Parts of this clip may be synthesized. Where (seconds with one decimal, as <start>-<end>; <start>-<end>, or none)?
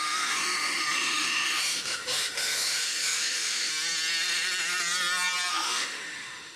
0.0-3.7; 5.5-6.6